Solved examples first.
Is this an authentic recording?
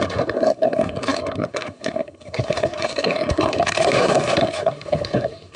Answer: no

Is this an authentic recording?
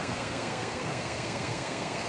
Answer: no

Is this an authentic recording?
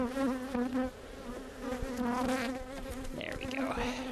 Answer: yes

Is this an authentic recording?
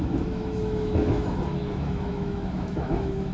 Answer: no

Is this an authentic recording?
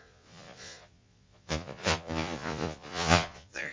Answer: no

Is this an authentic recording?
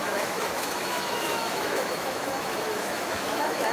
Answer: no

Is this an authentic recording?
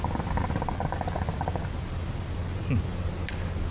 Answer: yes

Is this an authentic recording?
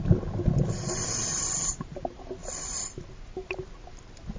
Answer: yes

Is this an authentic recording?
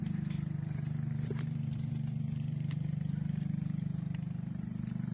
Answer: no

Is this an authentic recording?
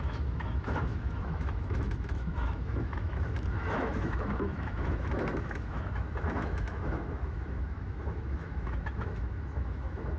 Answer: no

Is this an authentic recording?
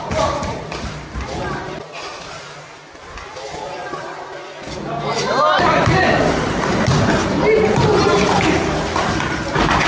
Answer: no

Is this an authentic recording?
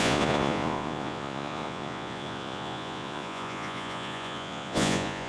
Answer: no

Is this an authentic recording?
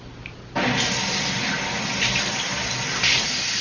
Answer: yes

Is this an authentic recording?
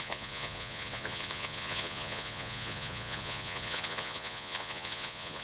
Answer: no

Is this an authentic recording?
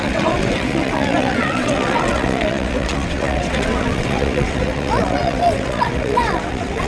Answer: no